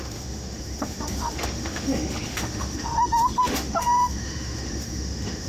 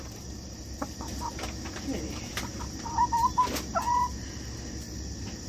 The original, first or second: second